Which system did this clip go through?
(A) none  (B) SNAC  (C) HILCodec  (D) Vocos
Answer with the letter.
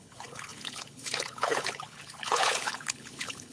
C